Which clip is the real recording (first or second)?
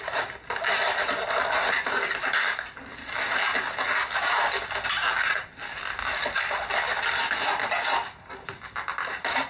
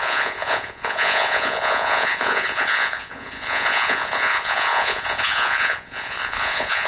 first